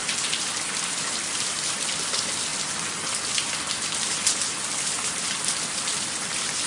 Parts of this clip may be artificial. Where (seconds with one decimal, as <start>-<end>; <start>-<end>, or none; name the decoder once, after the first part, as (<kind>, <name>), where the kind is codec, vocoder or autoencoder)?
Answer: none